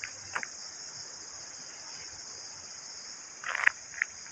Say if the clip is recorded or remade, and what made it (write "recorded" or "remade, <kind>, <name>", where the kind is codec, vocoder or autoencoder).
recorded